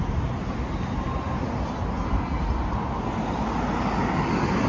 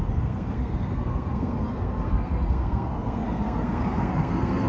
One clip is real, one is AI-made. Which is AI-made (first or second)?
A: second